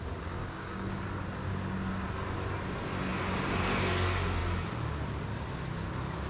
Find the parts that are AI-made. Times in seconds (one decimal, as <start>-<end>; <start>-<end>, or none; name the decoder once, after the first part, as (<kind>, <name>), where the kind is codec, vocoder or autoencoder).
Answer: 0.4-1.0 (codec, DAC)